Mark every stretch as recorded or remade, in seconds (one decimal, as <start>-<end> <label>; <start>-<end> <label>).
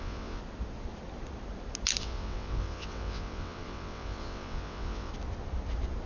0.0-0.4 remade; 0.4-2.0 recorded; 2.0-5.1 remade; 5.1-6.1 recorded